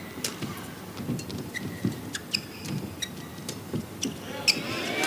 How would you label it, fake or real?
real